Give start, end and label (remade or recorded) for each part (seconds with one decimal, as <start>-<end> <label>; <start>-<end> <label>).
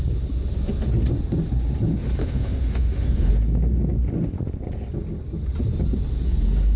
0.0-2.2 recorded; 2.2-3.3 remade; 3.3-6.8 recorded